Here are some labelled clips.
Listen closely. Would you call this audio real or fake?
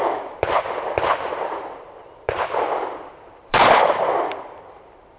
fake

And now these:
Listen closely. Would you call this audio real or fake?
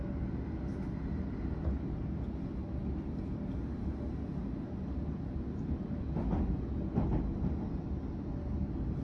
real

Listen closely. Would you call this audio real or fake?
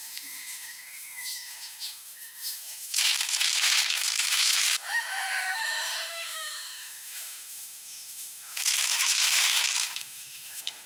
fake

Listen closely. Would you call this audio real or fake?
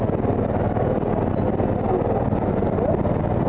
real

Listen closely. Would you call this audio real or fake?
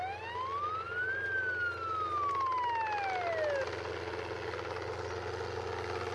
real